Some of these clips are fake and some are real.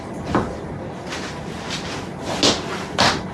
real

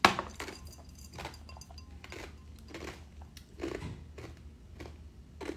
real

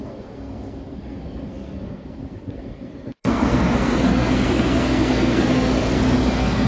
fake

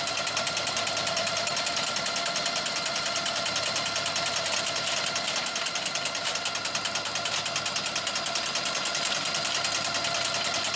real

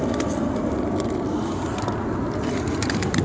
real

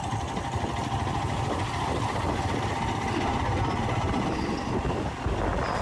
real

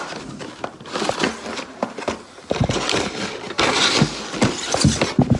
real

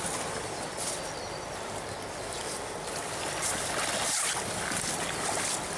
real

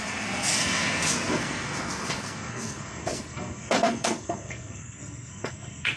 fake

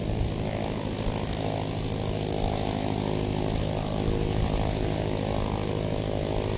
real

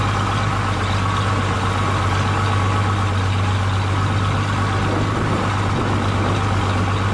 real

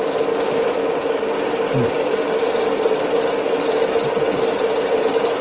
real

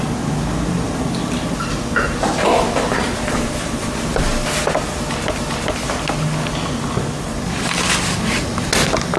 real